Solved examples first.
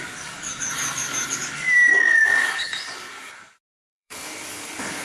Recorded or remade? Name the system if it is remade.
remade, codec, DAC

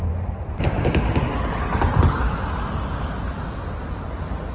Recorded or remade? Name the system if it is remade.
recorded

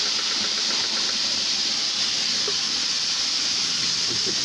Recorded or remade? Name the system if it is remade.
recorded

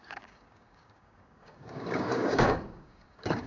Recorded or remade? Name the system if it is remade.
remade, codec, DAC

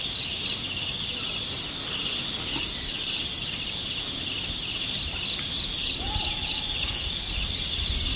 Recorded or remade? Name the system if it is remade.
recorded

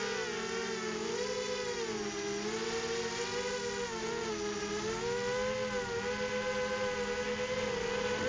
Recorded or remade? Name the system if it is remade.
recorded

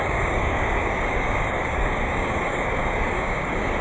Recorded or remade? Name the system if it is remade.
remade, codec, DAC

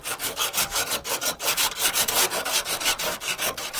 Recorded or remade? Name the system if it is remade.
remade, codec, DAC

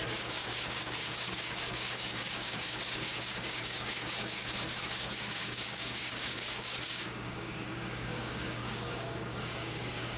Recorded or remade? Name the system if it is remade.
remade, codec, DAC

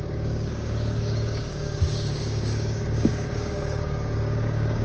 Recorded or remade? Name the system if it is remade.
remade, codec, DAC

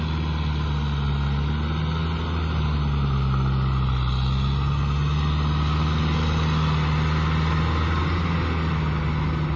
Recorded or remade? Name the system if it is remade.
recorded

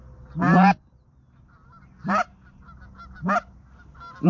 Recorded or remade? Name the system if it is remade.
recorded